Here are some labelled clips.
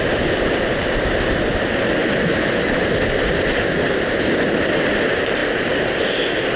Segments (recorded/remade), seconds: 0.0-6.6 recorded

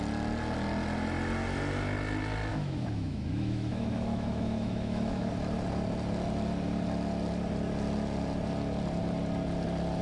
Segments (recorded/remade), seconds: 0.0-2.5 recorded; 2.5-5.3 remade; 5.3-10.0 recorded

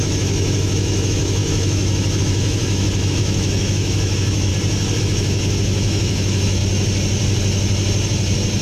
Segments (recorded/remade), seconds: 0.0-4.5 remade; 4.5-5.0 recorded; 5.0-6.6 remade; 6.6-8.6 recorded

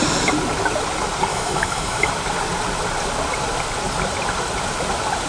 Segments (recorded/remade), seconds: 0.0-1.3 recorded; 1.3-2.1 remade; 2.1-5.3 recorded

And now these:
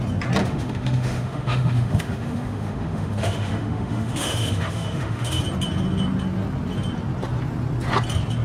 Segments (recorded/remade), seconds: 0.0-0.4 recorded; 0.4-5.4 remade; 5.4-8.4 recorded

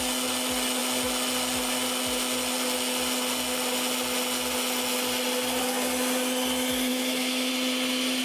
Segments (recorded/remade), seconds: 0.0-6.9 recorded; 6.9-7.5 remade; 7.5-8.2 recorded

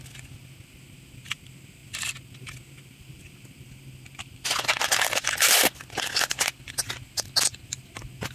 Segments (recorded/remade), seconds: 0.0-8.3 recorded

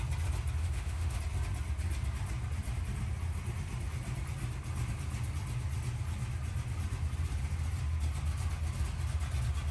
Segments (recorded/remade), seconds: 0.0-0.6 recorded; 0.6-1.2 remade; 1.2-9.7 recorded